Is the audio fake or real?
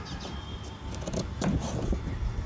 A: real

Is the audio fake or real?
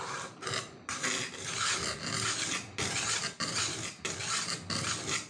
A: real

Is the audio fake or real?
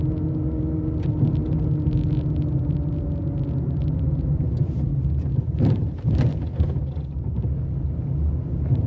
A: real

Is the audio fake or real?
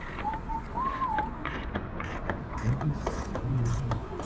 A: fake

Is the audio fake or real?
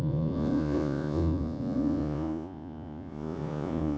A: fake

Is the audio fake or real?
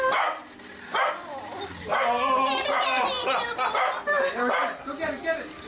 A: real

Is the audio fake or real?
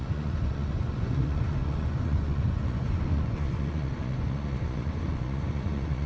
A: fake